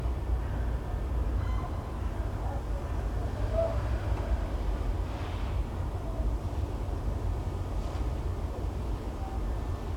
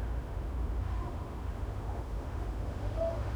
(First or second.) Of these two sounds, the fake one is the second